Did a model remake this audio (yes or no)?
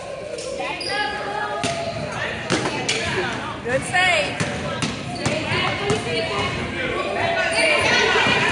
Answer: no